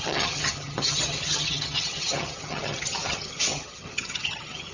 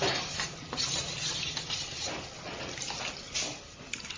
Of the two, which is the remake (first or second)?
first